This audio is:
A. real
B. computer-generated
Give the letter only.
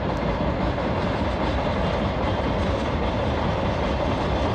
A